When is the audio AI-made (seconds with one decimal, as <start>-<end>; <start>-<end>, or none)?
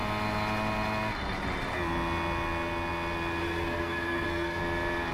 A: 3.4-4.6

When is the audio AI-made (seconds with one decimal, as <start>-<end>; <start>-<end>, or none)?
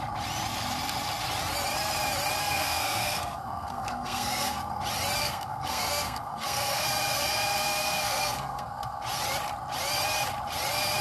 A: 2.4-4.8; 5.2-9.0